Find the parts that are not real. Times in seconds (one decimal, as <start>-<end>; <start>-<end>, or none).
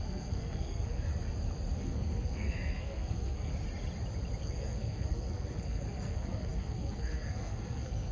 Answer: 0.0-1.1; 1.8-3.5; 4.4-8.1